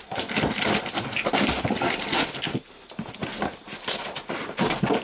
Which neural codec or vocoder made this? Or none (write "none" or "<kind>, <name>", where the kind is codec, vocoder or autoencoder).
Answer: none